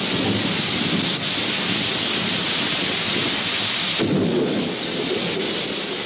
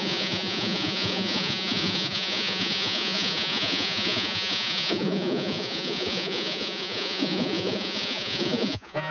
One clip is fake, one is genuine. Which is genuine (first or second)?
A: first